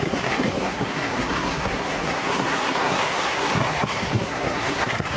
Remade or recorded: remade